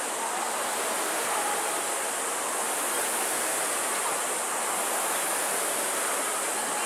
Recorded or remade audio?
recorded